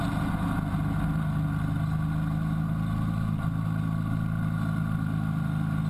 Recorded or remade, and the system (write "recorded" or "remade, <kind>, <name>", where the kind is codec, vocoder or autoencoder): recorded